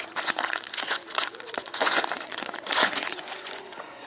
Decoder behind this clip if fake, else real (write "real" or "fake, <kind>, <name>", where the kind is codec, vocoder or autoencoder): fake, vocoder, Vocos